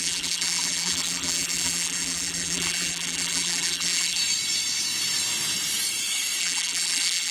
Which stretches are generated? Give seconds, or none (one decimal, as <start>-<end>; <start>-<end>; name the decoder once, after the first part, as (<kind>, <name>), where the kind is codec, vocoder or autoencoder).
0.0-4.2 (vocoder, BigVGAN v2); 6.4-7.3